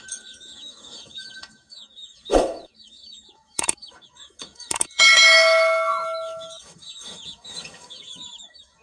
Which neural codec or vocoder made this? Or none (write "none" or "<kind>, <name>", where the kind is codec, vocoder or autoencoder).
autoencoder, DAC-VAE